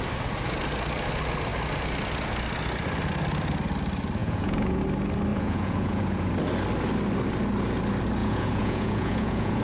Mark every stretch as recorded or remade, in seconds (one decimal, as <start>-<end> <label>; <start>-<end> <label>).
0.0-4.2 recorded; 4.2-4.8 remade; 4.8-5.3 recorded; 5.3-6.3 remade; 6.3-8.2 recorded; 8.2-9.6 remade

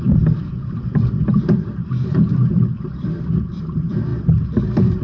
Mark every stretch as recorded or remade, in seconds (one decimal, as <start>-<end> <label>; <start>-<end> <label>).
0.0-4.1 remade; 4.1-4.6 recorded; 4.6-5.0 remade

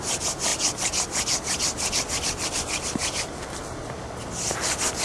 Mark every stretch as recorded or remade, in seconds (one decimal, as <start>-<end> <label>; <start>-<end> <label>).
0.0-5.0 recorded